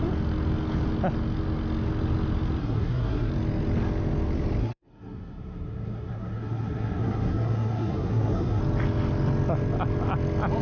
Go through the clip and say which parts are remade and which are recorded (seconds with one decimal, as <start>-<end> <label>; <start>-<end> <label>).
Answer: 0.0-2.6 recorded; 2.6-3.3 remade; 3.3-4.6 recorded; 4.6-8.6 remade; 8.6-10.6 recorded